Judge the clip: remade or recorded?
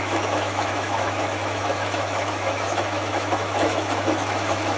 remade